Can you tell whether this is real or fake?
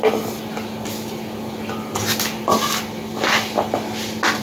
real